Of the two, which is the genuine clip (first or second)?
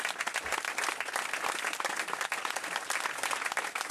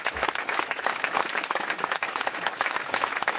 first